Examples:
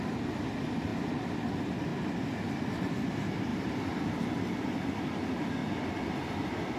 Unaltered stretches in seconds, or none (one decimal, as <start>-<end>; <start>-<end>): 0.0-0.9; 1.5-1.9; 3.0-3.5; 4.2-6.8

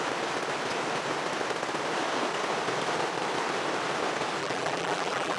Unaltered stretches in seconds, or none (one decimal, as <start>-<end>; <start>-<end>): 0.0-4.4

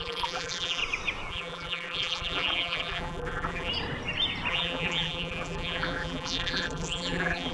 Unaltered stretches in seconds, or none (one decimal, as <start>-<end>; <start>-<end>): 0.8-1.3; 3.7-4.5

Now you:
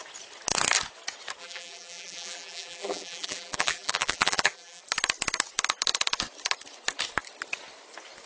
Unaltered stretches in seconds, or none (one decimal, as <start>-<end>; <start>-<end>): 0.0-1.4; 4.8-8.3

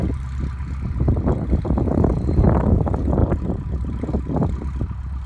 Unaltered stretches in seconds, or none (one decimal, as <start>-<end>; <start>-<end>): 0.0-3.2; 4.0-5.3